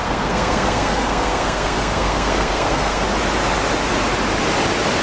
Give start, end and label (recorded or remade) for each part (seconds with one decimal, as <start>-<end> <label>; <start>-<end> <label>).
0.0-3.0 remade; 3.0-5.0 recorded